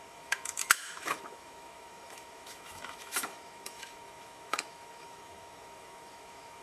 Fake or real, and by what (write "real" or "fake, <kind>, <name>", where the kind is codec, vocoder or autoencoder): fake, autoencoder, DAC-VAE